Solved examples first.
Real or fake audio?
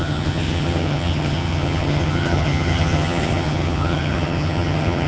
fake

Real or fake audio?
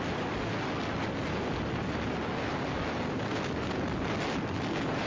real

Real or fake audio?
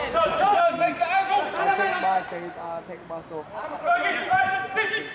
real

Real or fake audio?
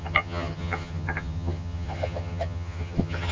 fake